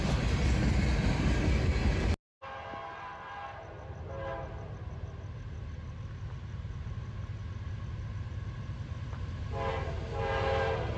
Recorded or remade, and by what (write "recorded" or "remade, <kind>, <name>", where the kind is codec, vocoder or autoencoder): recorded